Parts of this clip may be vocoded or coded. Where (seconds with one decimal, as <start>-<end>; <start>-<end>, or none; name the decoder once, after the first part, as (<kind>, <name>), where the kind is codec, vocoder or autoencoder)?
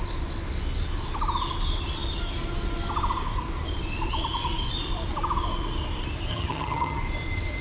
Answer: 6.3-7.0 (vocoder, HiFi-GAN)